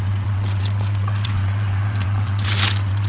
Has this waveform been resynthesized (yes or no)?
yes